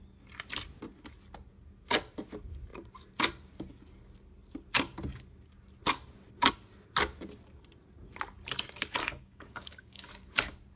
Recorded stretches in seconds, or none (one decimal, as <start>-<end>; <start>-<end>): 0.0-9.0; 10.1-10.8